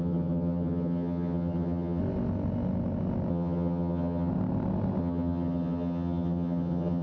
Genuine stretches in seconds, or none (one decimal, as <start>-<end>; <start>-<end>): 2.0-3.3; 4.3-5.0